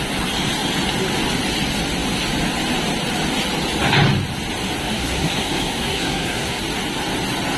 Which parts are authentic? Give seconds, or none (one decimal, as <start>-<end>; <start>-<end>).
0.0-4.8; 6.6-7.6